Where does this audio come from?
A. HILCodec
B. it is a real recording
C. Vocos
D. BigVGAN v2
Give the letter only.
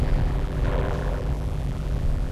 D